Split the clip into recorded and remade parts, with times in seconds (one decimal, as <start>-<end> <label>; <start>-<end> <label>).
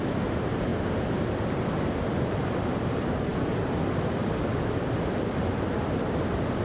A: 0.0-6.6 recorded